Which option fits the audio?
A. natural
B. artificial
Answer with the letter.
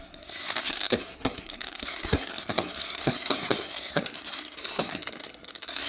B